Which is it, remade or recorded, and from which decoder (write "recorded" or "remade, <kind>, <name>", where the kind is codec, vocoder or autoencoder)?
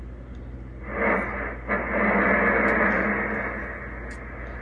recorded